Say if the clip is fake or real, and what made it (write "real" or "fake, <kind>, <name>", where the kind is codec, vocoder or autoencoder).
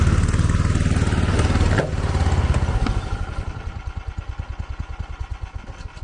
real